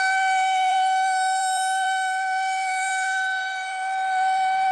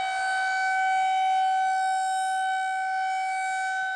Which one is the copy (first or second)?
first